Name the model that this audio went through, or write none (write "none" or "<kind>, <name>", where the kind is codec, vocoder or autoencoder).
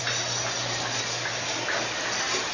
none